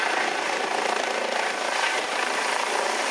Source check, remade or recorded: recorded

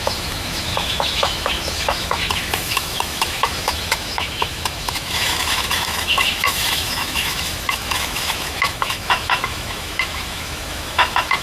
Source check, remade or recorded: remade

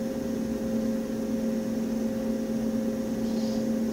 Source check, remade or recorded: recorded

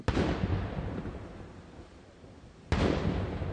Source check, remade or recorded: recorded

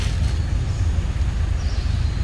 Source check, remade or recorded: recorded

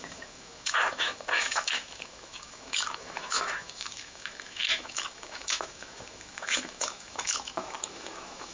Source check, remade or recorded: remade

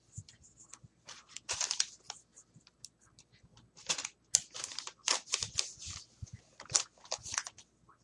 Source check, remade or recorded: recorded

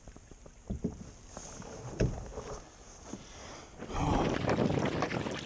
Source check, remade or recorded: recorded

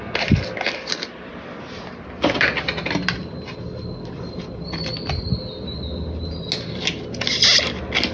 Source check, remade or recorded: recorded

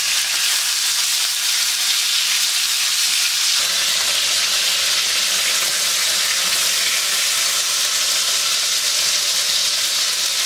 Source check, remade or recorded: recorded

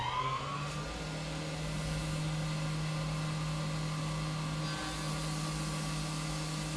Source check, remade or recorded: recorded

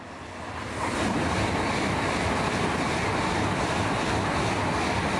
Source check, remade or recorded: recorded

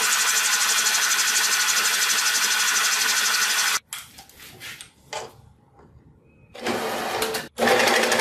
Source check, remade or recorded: recorded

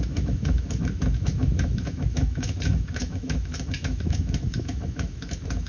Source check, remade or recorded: remade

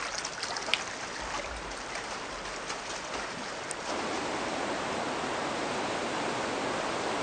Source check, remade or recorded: recorded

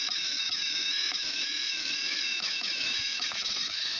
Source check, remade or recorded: remade